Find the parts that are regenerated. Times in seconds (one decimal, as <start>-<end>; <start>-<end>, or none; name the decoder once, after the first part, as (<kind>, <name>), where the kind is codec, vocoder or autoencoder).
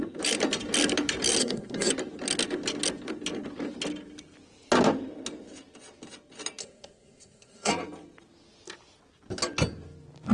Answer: 1.4-1.9 (codec, SNAC); 6.6-7.7